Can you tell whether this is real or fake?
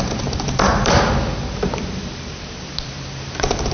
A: fake